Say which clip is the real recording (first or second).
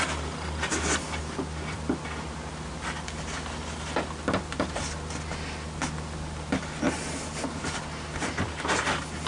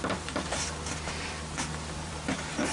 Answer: first